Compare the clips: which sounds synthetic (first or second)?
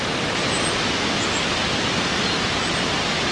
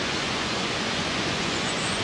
second